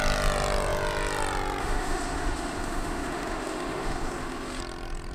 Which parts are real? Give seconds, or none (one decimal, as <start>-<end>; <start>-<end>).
0.0-1.6; 4.6-5.1